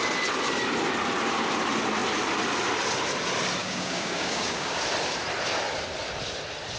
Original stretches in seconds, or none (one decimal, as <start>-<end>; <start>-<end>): 0.0-3.6; 4.8-6.8